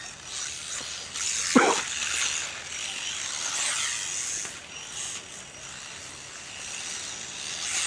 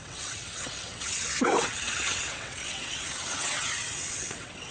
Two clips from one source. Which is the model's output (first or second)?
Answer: second